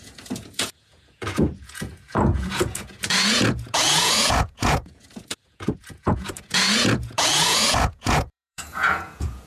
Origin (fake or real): fake